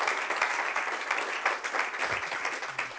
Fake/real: real